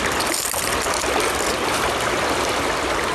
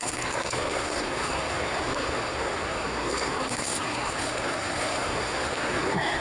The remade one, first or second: second